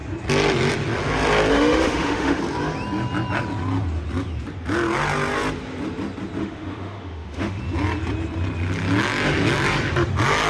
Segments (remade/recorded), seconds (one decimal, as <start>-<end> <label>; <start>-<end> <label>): 0.0-1.5 recorded; 1.5-2.4 remade; 2.4-6.4 recorded; 6.4-7.6 remade; 7.6-10.5 recorded